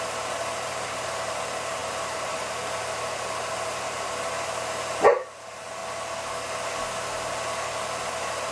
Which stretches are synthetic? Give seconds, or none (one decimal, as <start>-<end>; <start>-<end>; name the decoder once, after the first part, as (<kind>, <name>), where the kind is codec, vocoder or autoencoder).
0.0-5.8 (vocoder, BigVGAN v2); 8.1-8.5